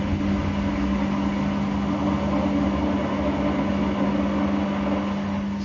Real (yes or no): yes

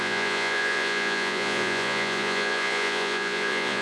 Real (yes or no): no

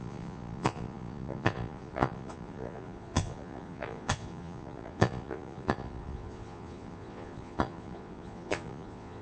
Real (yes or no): no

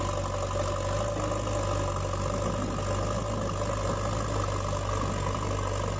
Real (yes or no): yes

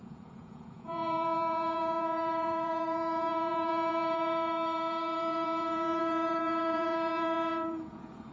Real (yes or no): no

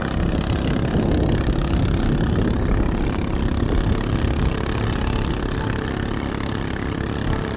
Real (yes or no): yes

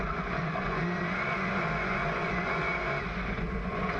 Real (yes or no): no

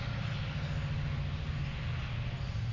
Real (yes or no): yes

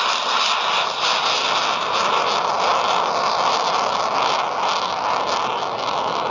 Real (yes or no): yes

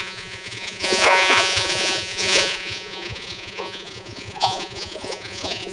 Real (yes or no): no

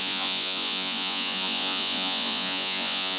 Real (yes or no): no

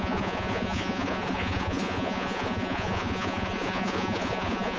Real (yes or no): no